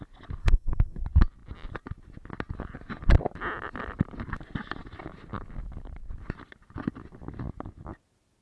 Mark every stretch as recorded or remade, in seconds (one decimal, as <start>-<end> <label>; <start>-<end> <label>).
0.0-0.4 recorded; 0.4-1.0 remade; 1.0-8.4 recorded